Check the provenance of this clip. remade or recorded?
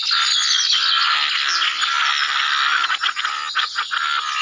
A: recorded